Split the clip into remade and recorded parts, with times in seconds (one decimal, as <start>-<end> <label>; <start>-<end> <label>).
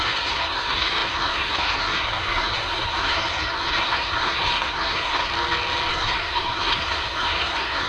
0.0-5.3 remade; 5.3-5.9 recorded; 5.9-7.9 remade